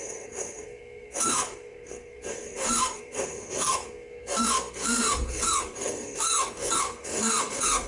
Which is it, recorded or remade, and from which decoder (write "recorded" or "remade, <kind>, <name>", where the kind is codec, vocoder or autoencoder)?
remade, codec, SNAC